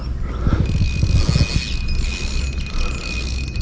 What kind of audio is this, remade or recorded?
recorded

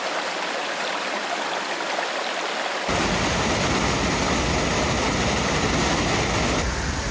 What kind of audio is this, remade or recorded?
recorded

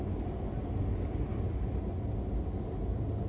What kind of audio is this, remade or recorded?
recorded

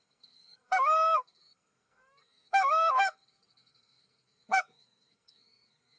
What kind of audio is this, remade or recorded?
remade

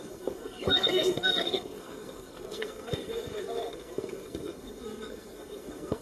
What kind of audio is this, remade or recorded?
remade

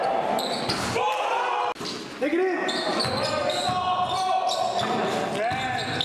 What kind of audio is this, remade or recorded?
recorded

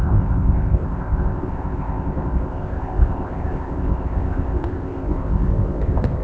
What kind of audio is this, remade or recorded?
remade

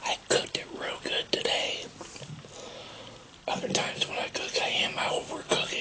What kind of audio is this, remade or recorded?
recorded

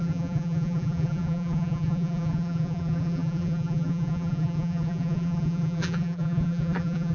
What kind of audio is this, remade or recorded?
remade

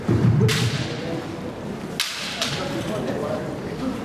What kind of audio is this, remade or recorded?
recorded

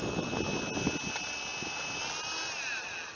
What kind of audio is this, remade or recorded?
recorded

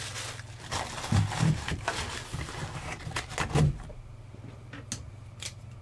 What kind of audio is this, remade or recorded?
recorded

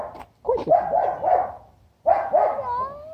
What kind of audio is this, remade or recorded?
recorded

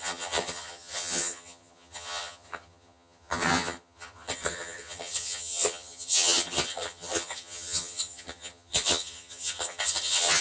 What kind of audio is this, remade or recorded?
remade